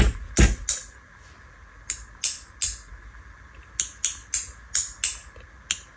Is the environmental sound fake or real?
real